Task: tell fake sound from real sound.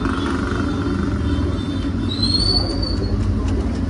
real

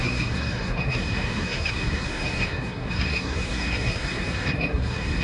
fake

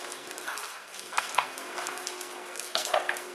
fake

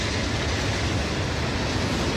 real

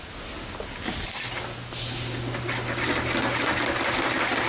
real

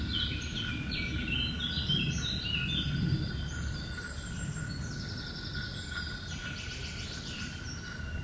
real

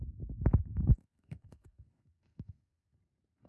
fake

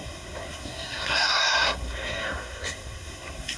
fake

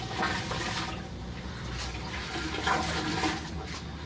real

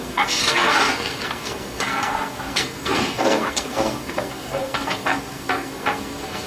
fake